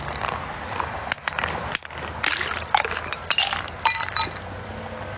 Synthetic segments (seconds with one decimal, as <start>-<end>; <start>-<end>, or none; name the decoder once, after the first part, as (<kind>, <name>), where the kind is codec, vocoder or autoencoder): none

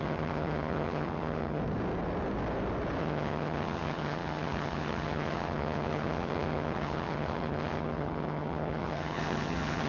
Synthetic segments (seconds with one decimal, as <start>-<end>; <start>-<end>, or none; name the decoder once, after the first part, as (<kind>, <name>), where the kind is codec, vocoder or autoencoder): 0.0-1.6 (vocoder, HiFi-GAN); 3.0-9.9

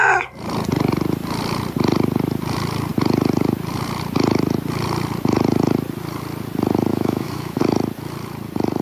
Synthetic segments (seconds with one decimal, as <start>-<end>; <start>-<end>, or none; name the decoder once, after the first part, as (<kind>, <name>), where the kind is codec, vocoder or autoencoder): 6.9-7.6 (autoencoder, DAC-VAE)

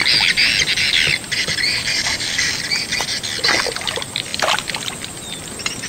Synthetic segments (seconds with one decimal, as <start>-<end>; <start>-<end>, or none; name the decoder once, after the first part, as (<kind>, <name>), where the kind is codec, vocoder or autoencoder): 1.9-2.6 (codec, DAC)

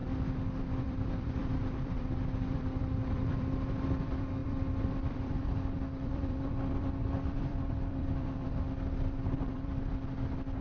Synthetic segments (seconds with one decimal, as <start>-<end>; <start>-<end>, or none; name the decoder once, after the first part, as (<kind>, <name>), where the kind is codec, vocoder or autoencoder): 0.6-9.7 (vocoder, BigVGAN v2)

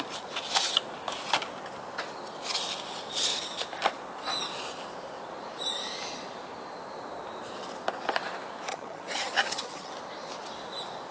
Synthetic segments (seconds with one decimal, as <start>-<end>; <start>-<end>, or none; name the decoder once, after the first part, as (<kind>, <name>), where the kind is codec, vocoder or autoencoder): 8.7-9.9 (vocoder, HiFi-GAN)